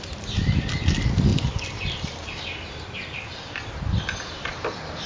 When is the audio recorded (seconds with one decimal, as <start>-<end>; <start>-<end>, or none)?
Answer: 0.0-5.1